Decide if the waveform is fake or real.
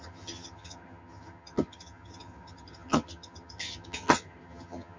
fake